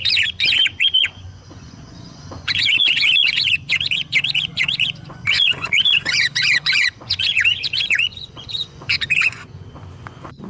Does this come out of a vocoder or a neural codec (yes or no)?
yes